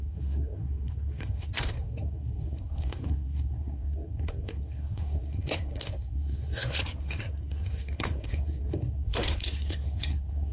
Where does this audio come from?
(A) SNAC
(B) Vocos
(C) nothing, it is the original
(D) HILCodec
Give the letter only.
A